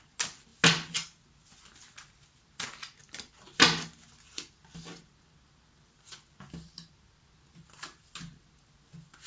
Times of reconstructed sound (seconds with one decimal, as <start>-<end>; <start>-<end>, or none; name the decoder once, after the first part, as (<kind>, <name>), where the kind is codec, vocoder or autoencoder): 3.0-5.1 (vocoder, BigVGAN v2)